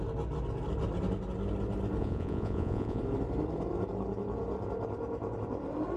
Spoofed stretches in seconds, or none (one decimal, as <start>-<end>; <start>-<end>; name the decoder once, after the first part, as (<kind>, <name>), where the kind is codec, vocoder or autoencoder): 2.0-3.0 (vocoder, Vocos)